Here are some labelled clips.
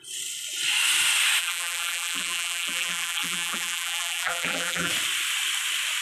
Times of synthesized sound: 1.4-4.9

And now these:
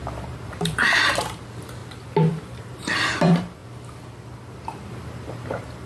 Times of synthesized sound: 0.0-1.8; 2.3-3.6; 5.3-5.9

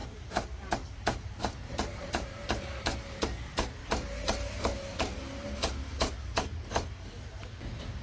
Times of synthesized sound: 0.0-3.9

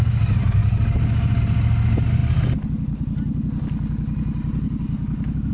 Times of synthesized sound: none

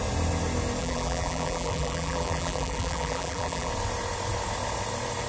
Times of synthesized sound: 0.8-3.7